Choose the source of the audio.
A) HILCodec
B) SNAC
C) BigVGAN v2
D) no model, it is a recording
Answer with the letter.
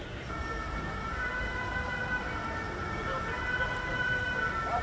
C